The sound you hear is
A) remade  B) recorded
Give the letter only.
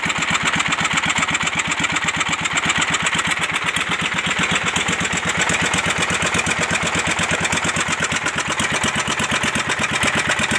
B